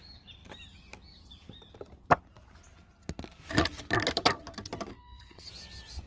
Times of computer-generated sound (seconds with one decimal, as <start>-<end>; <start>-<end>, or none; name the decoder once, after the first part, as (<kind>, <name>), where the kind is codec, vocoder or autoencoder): 4.9-5.5 (codec, SNAC)

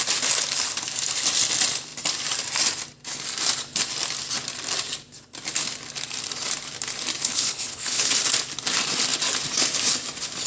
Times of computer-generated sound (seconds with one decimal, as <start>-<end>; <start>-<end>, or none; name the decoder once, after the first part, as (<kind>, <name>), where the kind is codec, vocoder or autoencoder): 7.2-8.2 (codec, HILCodec)

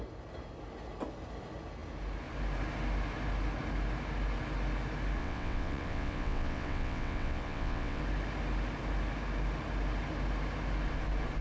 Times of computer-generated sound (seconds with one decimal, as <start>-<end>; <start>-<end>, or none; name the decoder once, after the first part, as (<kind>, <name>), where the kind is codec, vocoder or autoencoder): 5.2-8.0 (vocoder, WaveNeXt)

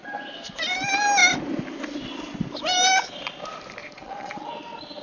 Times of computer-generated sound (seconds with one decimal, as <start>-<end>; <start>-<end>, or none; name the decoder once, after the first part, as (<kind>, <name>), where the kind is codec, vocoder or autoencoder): 3.8-4.5 (vocoder, Vocos)

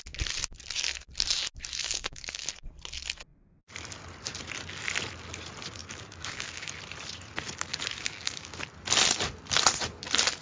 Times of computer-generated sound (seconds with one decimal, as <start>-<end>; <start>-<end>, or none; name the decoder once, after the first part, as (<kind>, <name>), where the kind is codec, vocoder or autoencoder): 1.8-2.5 (codec, DAC); 5.8-6.7; 7.7-8.6

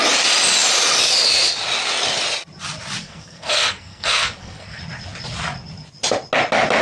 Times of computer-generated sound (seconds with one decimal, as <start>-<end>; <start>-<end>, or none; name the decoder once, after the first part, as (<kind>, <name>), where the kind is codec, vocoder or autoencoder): 3.0-4.8 (codec, SNAC)